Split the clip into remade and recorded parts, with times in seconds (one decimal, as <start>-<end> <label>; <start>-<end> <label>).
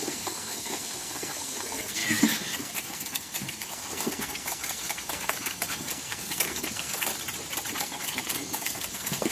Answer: 0.0-7.1 remade; 7.1-7.8 recorded; 7.8-9.3 remade